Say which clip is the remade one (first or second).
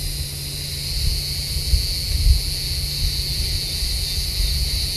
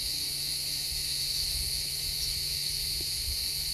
second